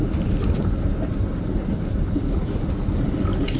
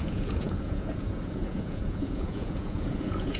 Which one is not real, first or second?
second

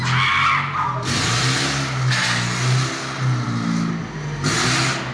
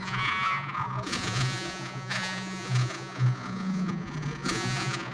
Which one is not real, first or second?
second